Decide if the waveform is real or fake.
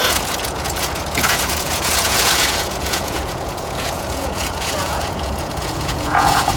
fake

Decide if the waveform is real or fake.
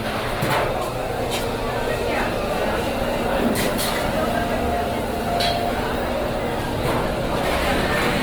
real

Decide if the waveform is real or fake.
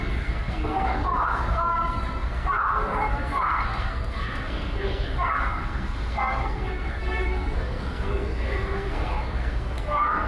fake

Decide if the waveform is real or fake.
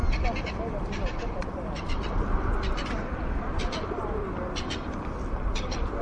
real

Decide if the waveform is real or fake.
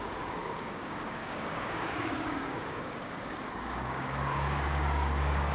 fake